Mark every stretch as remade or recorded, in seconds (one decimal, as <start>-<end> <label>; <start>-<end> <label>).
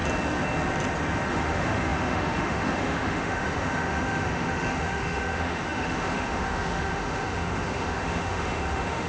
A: 0.0-1.3 recorded; 1.3-9.1 remade